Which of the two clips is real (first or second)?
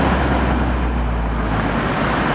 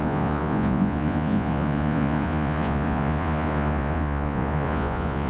first